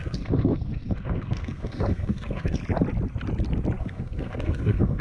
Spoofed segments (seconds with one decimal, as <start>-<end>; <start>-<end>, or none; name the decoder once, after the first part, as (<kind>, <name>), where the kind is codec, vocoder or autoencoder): 0.0-2.6 (codec, SNAC); 3.8-5.0